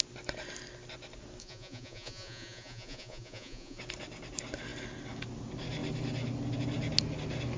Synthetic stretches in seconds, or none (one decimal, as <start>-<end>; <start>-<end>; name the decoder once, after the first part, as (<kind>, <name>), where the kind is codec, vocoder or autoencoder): 1.4-3.8 (vocoder, Vocos)